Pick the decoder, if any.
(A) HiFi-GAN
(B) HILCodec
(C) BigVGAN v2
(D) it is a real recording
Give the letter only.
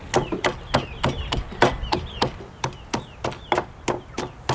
D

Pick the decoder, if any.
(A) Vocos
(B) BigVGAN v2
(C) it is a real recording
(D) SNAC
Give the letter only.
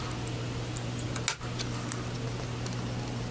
C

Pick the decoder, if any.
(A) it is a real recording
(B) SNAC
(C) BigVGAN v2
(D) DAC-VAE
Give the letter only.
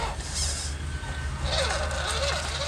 A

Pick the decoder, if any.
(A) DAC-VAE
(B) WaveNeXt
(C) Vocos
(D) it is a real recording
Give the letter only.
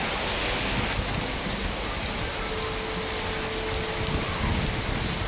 D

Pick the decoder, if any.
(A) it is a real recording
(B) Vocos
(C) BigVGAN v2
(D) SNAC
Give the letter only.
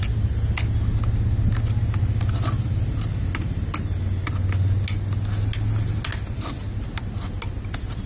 A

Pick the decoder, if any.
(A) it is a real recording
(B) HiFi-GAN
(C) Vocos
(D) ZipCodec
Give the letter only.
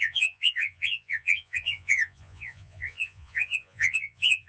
C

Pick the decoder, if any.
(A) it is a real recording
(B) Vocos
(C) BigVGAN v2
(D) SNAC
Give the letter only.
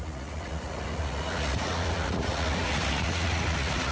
B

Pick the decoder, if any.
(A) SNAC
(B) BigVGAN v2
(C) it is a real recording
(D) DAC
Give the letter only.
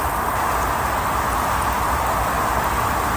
C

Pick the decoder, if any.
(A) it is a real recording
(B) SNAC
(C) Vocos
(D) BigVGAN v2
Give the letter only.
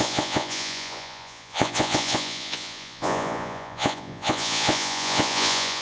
C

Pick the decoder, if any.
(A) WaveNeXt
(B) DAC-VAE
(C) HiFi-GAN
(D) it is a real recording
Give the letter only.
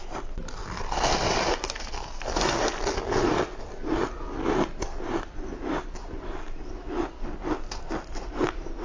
D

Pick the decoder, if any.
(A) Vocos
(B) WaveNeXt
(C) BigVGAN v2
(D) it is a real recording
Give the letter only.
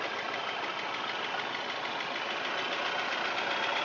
D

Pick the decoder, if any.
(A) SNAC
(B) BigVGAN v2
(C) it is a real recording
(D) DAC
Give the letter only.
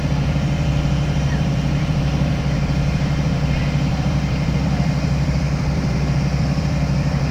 B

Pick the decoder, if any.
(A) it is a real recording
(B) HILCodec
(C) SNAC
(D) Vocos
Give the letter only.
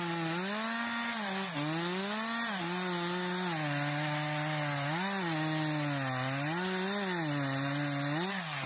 A